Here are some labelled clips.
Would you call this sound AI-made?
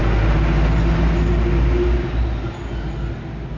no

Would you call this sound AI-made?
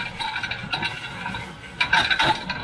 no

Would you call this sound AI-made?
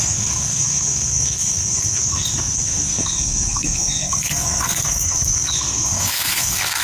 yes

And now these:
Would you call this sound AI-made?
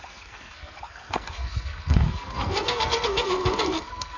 yes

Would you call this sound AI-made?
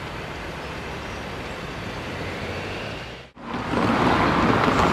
no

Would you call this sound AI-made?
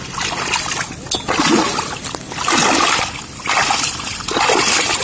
no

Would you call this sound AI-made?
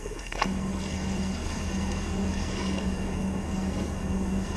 yes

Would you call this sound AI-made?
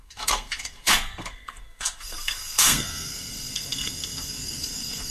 yes